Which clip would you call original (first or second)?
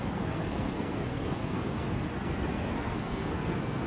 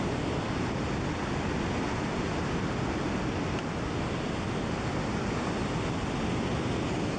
second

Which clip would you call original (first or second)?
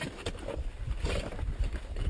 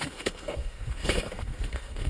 first